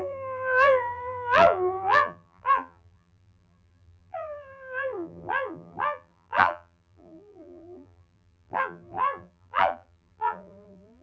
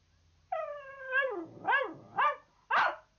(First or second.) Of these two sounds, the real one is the second